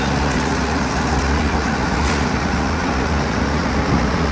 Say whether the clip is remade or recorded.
remade